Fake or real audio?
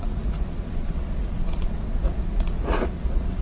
fake